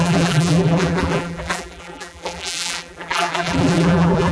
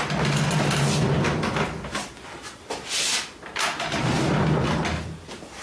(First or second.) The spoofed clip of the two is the first